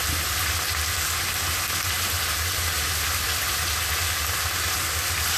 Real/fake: real